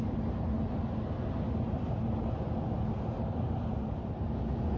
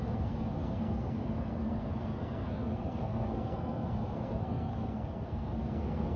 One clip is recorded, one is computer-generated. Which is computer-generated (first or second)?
second